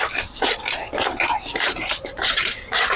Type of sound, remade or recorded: remade